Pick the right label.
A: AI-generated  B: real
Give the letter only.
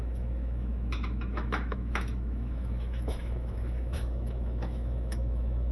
A